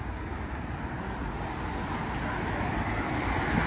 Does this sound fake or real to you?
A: real